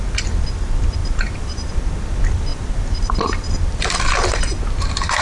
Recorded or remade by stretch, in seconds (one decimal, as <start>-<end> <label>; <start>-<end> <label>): 0.0-1.0 recorded; 1.0-1.7 remade; 1.7-2.5 recorded; 2.5-3.1 remade; 3.1-5.2 recorded